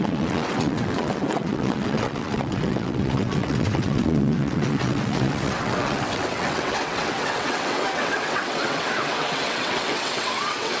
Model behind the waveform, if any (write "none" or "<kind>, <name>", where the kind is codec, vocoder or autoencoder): vocoder, WaveNeXt